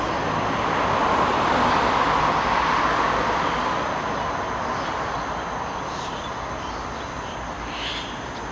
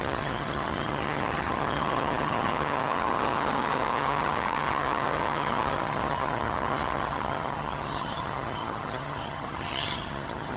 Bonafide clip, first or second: first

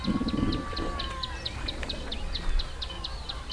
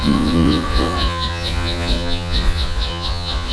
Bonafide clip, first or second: first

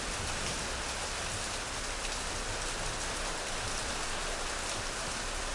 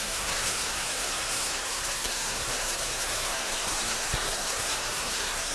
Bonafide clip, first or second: first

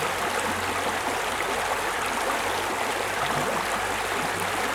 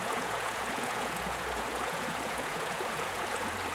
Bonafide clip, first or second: first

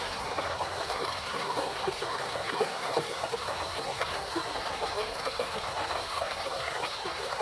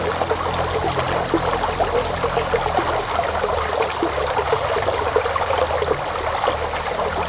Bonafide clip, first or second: second